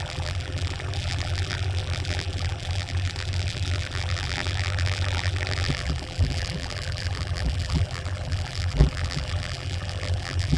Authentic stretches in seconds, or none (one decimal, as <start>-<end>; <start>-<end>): none